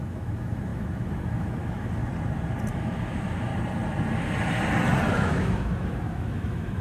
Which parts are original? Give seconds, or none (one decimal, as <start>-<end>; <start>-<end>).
2.0-2.7; 3.5-5.1